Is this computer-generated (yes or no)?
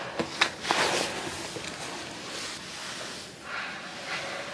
no